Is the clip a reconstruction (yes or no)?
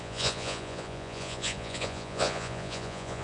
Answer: yes